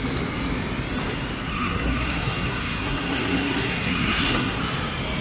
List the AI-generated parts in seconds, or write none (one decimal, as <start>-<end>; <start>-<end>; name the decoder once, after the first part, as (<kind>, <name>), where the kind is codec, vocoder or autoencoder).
1.5-4.6 (codec, SNAC)